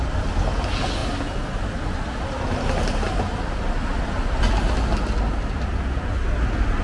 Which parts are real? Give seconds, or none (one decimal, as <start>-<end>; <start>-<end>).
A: 0.0-6.8